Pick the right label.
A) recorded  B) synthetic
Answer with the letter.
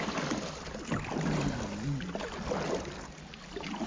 A